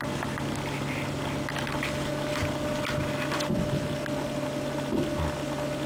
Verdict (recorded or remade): recorded